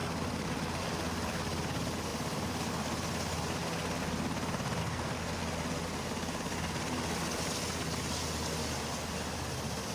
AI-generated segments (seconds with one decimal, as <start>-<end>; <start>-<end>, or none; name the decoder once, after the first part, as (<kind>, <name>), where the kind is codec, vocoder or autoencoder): 4.8-5.4 (codec, SNAC)